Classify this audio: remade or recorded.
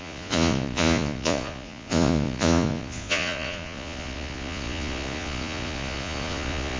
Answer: remade